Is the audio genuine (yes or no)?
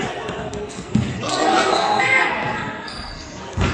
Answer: no